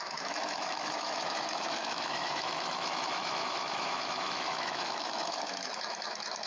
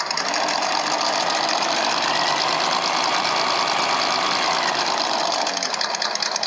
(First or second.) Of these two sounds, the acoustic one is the second